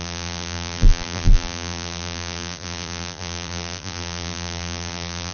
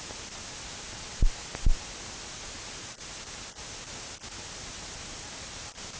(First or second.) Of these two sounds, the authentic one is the second